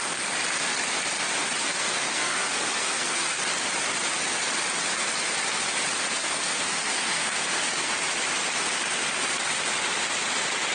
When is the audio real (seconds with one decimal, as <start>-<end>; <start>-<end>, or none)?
0.0-1.6; 3.4-6.2; 7.9-10.7